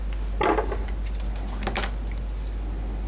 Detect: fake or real real